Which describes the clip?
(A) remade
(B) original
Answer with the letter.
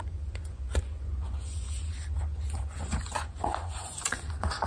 A